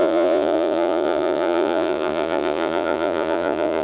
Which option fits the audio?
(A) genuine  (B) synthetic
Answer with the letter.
B